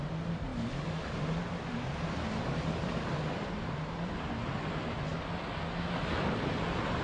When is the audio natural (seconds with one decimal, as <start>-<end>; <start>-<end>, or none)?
0.0-7.0